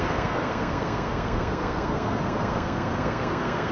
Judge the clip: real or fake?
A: fake